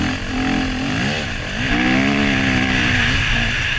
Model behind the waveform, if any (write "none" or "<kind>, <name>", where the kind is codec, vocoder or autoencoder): none